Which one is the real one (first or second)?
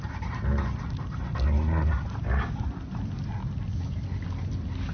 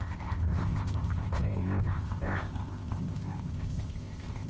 first